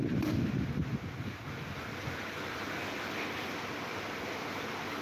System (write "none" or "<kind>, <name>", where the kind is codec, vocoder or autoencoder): none